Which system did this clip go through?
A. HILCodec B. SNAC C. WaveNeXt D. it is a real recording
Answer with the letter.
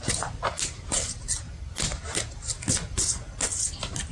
D